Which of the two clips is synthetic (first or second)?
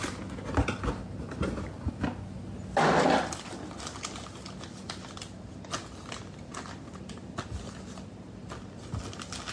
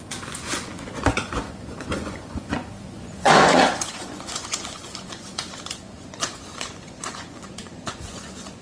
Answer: second